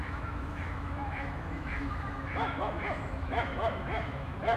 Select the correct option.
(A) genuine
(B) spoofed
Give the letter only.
B